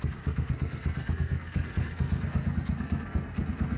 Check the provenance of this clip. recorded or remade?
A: remade